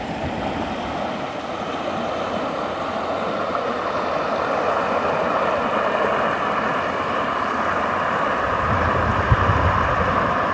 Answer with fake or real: real